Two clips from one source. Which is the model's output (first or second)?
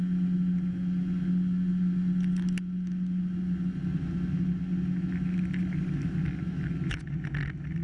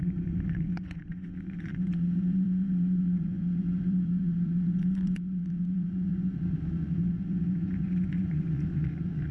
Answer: second